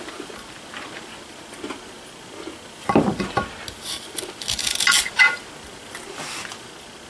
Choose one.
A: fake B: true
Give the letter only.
B